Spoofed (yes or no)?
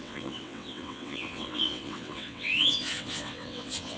yes